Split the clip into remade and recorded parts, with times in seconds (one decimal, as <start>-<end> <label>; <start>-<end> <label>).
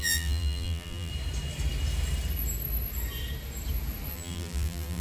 0.0-1.1 remade; 1.1-4.1 recorded; 4.1-5.0 remade